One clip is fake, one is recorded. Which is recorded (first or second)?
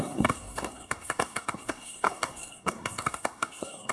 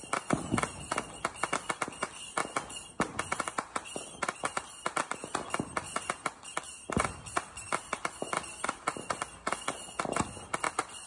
second